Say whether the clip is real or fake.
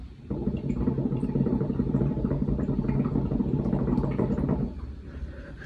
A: fake